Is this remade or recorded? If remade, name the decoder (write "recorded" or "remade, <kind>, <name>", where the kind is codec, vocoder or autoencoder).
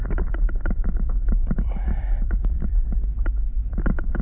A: remade, vocoder, BigVGAN v2